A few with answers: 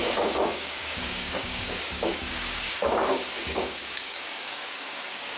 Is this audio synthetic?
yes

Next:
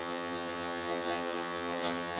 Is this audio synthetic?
yes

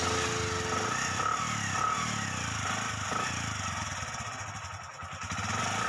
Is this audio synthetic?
no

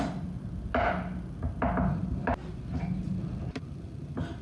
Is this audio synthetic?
no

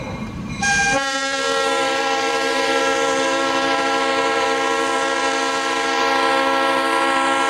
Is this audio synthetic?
yes